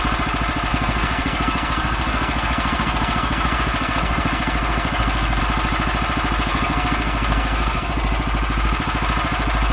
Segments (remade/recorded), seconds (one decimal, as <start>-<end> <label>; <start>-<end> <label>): 0.0-0.7 recorded; 0.7-5.4 remade; 5.4-6.5 recorded; 6.5-7.9 remade; 7.9-9.7 recorded